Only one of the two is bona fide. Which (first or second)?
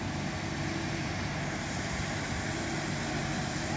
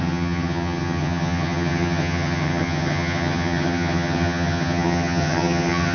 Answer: first